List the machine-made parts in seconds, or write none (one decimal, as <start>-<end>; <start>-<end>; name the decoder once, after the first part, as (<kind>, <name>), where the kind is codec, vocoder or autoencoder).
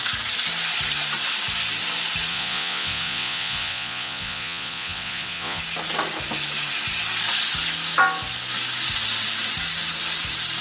2.3-5.6 (vocoder, Vocos)